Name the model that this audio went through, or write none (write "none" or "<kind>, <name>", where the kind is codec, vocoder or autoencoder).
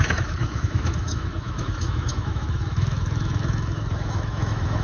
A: autoencoder, DAC-VAE